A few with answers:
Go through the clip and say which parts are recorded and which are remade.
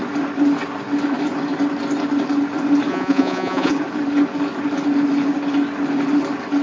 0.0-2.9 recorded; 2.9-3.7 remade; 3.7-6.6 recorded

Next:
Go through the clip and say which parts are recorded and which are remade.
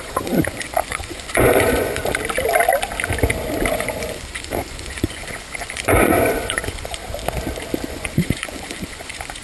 0.0-2.0 remade; 2.0-3.7 recorded; 3.7-7.0 remade; 7.0-7.9 recorded; 7.9-9.4 remade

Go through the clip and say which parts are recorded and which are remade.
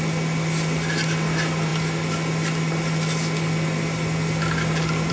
0.0-5.1 recorded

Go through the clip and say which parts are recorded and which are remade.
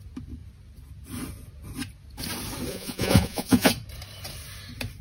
0.0-2.7 recorded; 2.7-3.7 remade; 3.7-5.0 recorded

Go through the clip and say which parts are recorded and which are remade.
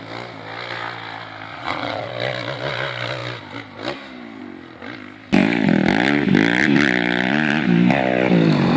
0.0-1.5 recorded; 1.5-2.1 remade; 2.1-8.8 recorded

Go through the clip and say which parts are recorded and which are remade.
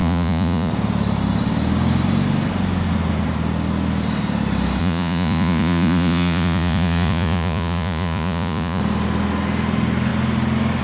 0.0-0.7 remade; 0.7-4.8 recorded; 4.8-8.8 remade; 8.8-10.8 recorded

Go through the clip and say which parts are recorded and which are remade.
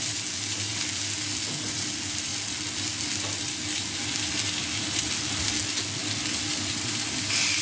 0.0-7.6 recorded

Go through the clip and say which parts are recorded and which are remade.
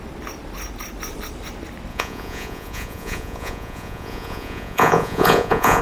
0.0-1.9 recorded; 1.9-5.8 remade